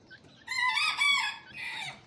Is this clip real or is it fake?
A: real